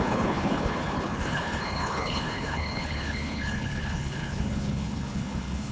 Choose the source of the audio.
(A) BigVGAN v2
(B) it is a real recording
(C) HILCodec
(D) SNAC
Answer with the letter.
C